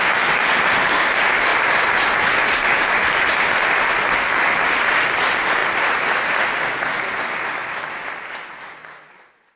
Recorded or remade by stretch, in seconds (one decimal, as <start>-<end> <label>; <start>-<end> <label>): 0.0-9.6 recorded